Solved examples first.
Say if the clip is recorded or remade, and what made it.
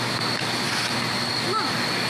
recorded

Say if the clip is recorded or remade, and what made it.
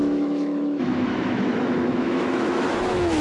remade, autoencoder, DAC-VAE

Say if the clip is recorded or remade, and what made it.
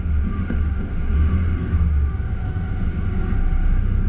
remade, autoencoder, DAC-VAE